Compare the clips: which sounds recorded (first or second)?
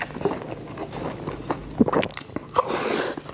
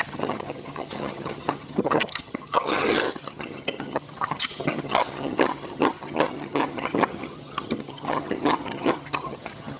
first